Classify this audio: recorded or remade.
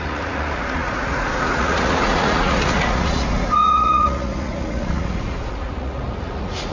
remade